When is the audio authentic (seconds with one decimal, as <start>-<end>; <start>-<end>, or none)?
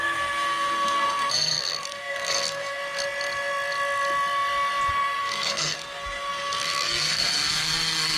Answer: 2.8-4.9